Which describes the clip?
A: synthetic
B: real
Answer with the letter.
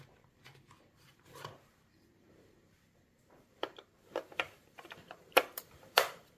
A